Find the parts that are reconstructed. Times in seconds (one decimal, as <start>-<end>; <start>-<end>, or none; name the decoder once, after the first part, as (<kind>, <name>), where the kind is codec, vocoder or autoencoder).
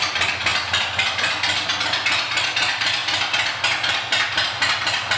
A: none